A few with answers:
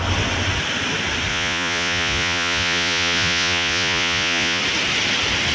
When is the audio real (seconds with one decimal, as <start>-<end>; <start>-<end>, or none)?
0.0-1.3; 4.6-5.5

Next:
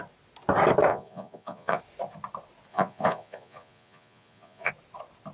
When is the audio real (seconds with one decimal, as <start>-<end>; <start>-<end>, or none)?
0.0-0.9; 1.8-2.7; 4.7-5.3

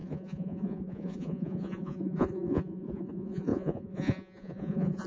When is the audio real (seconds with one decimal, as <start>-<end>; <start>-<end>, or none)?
none